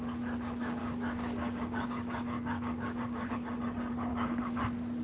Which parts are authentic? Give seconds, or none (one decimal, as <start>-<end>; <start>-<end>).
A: 0.0-0.8; 3.3-4.1; 4.6-5.0